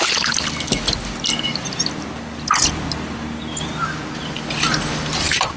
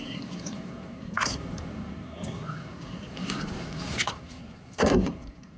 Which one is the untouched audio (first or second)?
first